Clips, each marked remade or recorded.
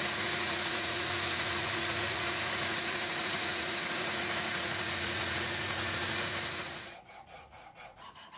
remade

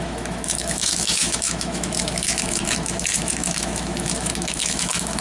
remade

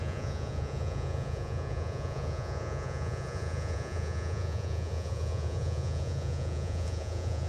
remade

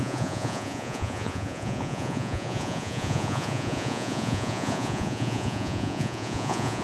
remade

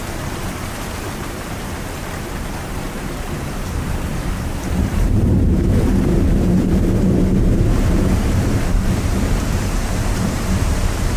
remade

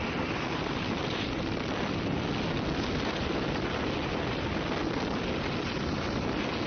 recorded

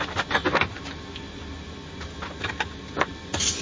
recorded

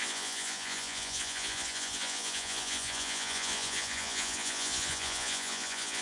remade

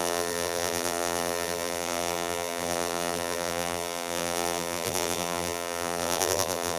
remade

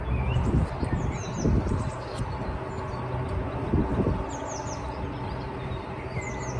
recorded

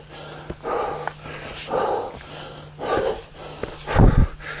recorded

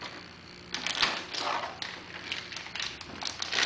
recorded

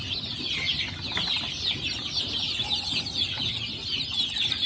recorded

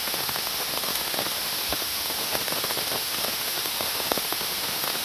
remade